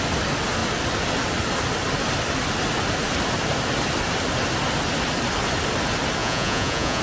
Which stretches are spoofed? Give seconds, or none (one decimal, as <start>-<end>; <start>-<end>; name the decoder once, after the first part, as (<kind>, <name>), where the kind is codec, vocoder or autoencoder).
6.2-7.0 (vocoder, Vocos)